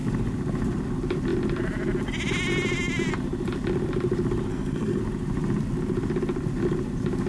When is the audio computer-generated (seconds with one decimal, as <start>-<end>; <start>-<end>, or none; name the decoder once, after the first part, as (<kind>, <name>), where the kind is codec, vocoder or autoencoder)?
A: 4.5-5.0 (codec, SNAC)